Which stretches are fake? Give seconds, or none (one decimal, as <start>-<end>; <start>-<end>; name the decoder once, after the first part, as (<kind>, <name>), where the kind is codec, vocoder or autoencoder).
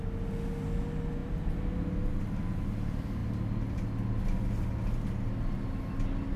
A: none